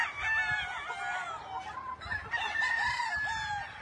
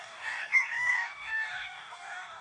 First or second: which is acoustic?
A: first